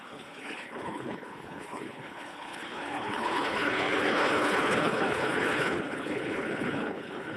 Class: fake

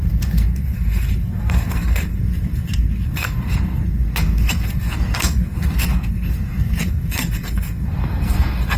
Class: fake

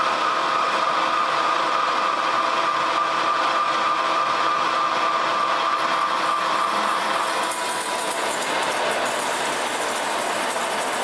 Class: real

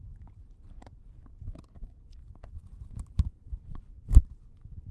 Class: fake